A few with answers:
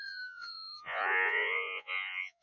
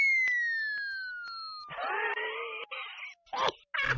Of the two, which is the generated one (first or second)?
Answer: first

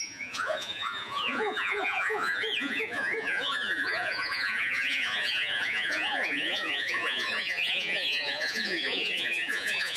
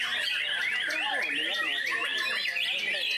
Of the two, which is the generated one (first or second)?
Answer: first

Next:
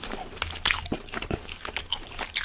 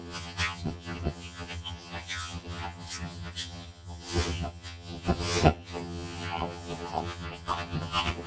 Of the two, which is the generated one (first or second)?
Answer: second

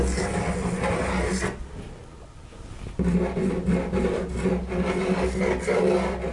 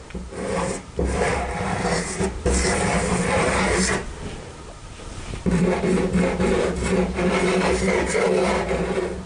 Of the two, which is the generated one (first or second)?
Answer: second